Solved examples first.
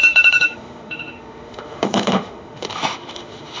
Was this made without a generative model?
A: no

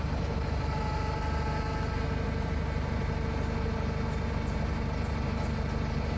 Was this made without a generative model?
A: yes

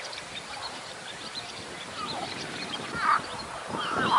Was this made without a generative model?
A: no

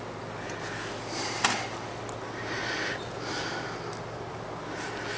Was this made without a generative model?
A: yes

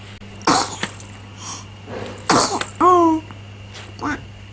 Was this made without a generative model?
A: yes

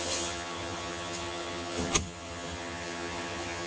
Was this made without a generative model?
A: no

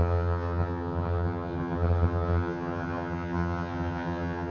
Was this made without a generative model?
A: no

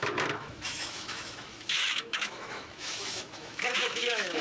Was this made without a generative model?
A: no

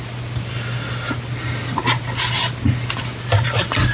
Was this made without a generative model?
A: yes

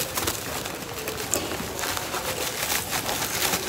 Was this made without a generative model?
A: yes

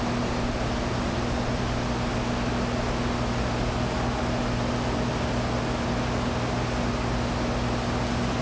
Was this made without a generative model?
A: yes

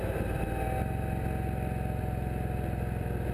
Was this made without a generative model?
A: yes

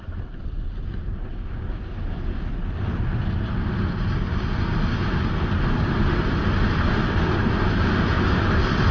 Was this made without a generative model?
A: yes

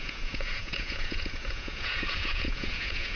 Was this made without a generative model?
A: no